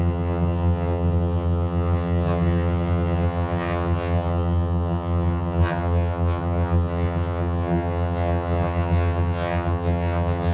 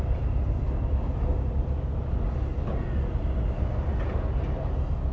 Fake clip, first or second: first